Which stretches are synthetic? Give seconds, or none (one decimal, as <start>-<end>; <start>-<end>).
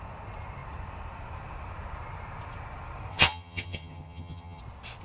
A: 3.1-4.6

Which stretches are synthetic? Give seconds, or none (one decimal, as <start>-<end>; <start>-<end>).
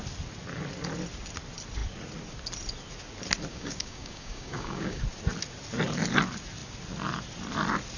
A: 3.5-5.0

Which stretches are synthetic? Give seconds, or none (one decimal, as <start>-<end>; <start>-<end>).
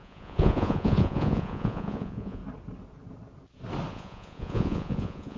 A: 0.0-2.4; 3.9-5.4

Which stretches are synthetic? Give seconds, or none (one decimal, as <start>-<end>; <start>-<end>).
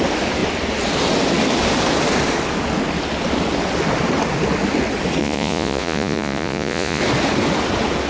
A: 5.2-7.0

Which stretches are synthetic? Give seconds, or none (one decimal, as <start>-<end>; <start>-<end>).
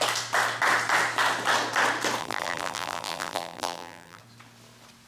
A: 2.2-4.2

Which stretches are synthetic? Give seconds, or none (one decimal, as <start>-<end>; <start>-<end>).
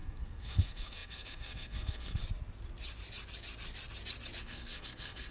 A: 0.0-2.2; 4.4-5.3